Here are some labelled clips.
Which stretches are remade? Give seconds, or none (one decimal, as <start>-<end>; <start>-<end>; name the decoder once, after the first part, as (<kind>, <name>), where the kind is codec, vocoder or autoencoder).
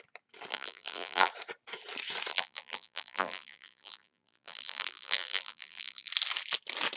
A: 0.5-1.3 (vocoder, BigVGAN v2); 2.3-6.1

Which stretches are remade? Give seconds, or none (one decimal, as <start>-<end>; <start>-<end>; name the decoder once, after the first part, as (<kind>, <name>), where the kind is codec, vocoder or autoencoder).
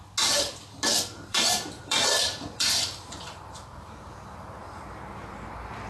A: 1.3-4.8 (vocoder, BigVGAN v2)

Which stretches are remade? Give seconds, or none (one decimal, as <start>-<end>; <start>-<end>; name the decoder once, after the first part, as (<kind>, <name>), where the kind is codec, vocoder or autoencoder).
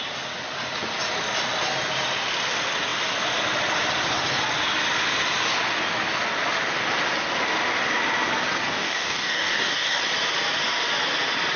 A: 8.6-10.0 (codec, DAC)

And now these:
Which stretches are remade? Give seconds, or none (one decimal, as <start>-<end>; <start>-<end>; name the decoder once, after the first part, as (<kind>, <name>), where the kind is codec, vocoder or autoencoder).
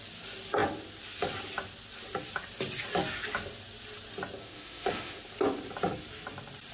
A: 4.4-5.2 (autoencoder, DAC-VAE)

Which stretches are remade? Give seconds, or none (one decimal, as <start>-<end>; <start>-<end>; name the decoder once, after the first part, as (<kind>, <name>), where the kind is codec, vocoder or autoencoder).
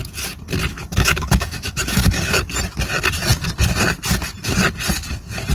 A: 0.7-2.5 (autoencoder, DAC-VAE)